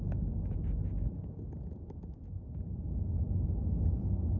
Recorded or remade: recorded